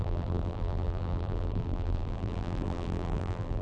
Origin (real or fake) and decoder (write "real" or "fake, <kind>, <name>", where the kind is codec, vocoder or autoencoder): fake, vocoder, BigVGAN v2